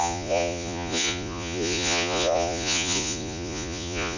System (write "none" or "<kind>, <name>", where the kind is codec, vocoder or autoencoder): vocoder, Vocos